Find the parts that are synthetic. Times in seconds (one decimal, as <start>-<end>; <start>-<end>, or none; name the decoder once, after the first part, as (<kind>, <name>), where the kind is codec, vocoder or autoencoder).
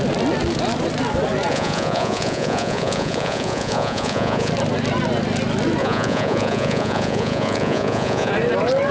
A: 1.5-4.5 (vocoder, Vocos); 5.8-8.3